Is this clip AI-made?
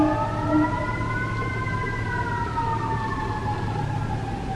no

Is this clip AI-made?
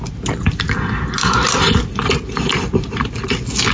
no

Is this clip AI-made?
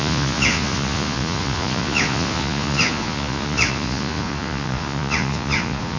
yes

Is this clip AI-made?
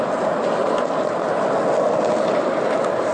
no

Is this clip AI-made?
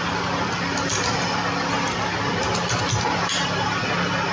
no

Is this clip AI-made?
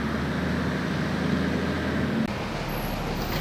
no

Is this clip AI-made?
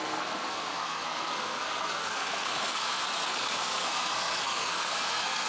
yes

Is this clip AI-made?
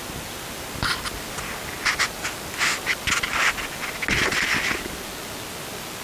no